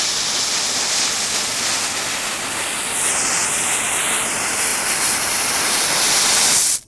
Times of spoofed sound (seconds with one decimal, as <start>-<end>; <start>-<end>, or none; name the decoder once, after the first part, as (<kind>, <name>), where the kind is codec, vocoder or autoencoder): none